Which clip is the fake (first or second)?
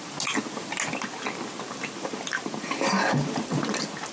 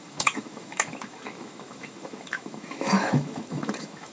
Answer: second